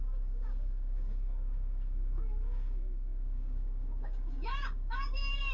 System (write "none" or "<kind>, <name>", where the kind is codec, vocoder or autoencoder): codec, DAC